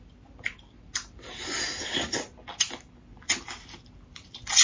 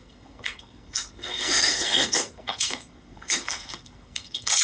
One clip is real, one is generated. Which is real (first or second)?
first